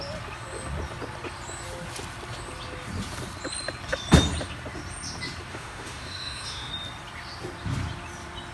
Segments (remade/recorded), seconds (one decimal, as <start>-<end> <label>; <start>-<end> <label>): 0.0-5.5 recorded; 5.5-6.7 remade; 6.7-8.5 recorded